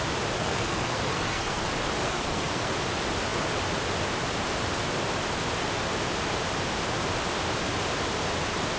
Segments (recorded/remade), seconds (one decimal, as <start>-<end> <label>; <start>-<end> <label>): 0.0-0.4 recorded; 0.4-1.6 remade; 1.6-2.0 recorded; 2.0-2.7 remade; 2.7-8.8 recorded